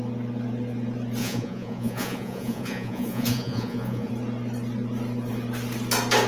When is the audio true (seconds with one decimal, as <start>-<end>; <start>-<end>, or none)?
0.0-1.2; 4.1-6.3